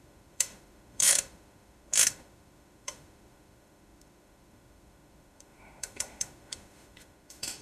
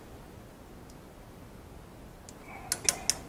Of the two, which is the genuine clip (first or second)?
second